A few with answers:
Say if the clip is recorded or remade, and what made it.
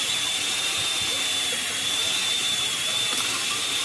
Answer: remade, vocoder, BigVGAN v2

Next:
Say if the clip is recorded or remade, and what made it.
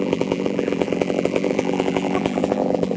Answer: remade, vocoder, BigVGAN v2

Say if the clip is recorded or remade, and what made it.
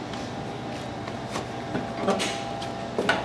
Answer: recorded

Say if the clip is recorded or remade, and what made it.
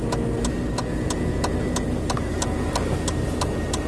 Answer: recorded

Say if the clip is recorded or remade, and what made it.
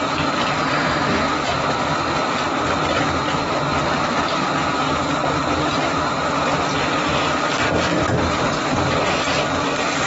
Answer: recorded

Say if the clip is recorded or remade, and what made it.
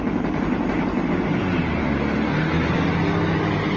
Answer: recorded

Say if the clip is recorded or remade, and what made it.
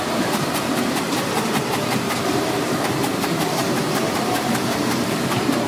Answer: remade, vocoder, BigVGAN v2